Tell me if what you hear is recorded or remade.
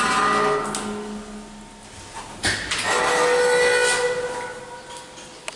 recorded